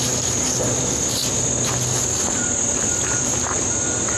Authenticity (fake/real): real